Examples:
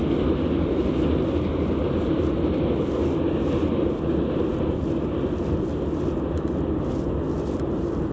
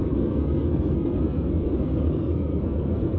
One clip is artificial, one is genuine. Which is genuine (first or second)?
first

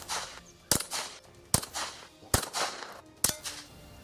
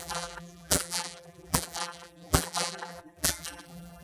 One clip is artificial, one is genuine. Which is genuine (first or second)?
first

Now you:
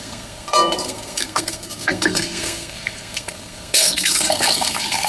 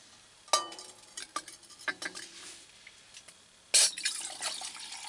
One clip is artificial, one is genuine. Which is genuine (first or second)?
second